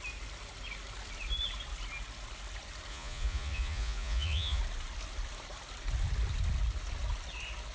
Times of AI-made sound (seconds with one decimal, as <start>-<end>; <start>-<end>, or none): 2.9-4.6